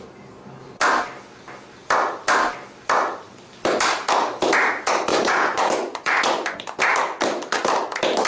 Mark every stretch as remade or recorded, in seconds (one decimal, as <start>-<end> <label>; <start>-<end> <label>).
0.0-5.1 recorded; 5.1-6.8 remade; 6.8-8.3 recorded